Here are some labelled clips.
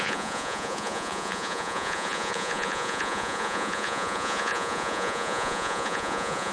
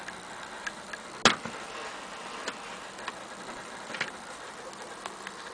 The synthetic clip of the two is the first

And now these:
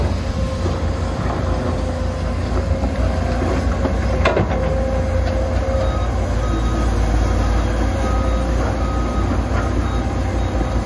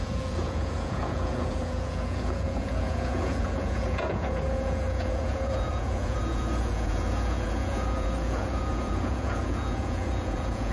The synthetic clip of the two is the second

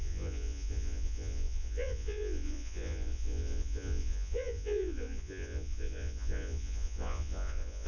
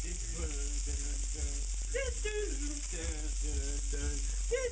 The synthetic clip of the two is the first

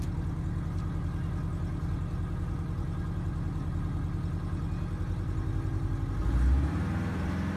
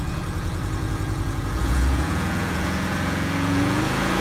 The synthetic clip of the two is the second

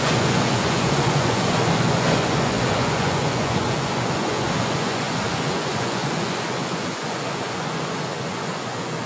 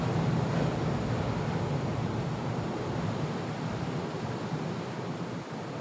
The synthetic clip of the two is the first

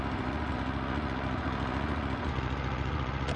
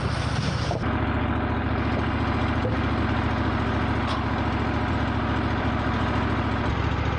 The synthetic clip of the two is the first